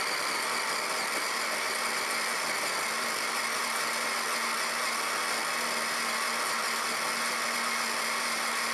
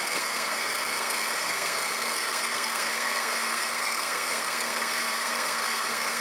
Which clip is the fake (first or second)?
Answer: second